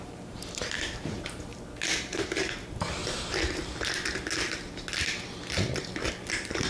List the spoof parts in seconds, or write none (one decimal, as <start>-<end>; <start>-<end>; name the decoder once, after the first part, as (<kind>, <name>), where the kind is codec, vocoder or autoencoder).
0.0-1.5 (vocoder, BigVGAN v2); 2.0-3.0; 6.3-6.7